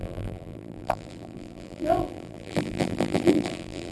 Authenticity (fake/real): fake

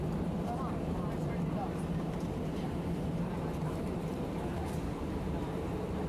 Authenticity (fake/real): fake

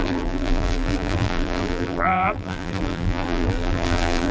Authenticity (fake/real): fake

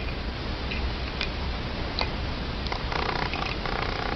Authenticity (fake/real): real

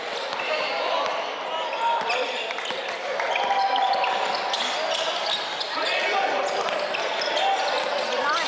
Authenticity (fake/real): real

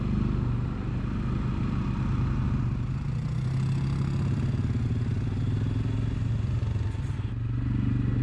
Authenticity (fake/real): real